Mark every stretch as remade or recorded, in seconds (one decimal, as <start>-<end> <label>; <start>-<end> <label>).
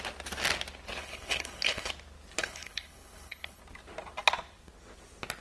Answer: 0.0-1.0 recorded; 1.0-1.9 remade; 1.9-2.4 recorded; 2.4-3.6 remade; 3.6-5.4 recorded